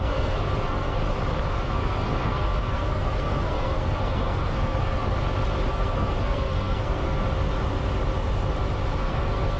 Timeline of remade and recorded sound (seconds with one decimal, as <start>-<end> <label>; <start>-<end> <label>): 0.0-1.0 remade; 1.0-1.5 recorded; 1.5-5.0 remade; 5.0-5.7 recorded; 5.7-7.2 remade; 7.2-9.0 recorded; 9.0-9.6 remade